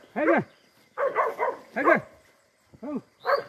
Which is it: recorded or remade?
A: recorded